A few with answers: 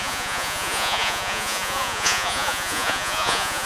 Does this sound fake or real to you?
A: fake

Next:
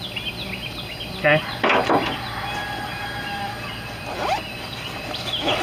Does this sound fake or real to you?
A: real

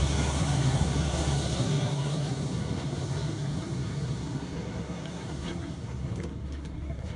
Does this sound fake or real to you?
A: fake